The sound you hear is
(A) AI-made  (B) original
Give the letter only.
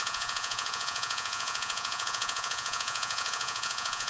A